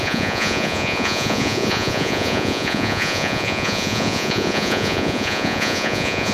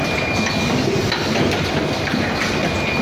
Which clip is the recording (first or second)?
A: second